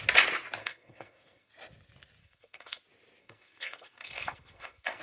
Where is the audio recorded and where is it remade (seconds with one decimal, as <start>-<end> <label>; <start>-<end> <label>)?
0.0-0.6 recorded; 0.6-1.5 remade; 1.5-2.2 recorded; 2.2-2.8 remade; 2.8-3.2 recorded; 3.2-5.0 remade